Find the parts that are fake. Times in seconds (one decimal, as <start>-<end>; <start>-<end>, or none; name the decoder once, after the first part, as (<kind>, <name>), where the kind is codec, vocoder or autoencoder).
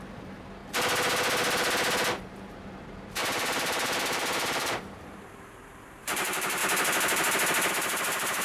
0.0-0.6 (vocoder, BigVGAN v2); 2.2-6.6; 7.7-8.4